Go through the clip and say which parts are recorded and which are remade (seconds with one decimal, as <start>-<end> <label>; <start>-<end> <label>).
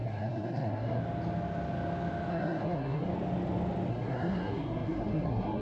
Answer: 0.0-1.0 remade; 1.0-2.3 recorded; 2.3-3.1 remade; 3.1-3.9 recorded; 3.9-5.6 remade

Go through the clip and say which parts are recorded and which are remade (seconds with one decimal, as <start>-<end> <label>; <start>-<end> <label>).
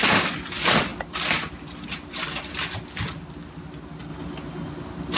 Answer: 0.0-5.2 recorded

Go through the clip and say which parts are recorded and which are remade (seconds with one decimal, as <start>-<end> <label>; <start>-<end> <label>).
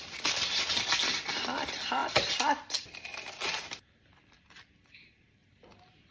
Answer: 0.0-6.1 recorded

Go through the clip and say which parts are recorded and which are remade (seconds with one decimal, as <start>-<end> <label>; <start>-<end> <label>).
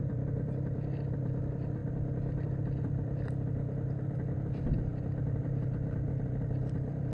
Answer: 0.0-7.1 remade